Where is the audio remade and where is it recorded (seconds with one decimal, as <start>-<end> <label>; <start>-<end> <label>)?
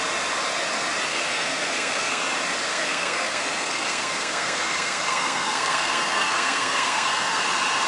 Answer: 0.0-1.1 recorded; 1.1-2.2 remade; 2.2-2.7 recorded; 2.7-7.4 remade; 7.4-7.9 recorded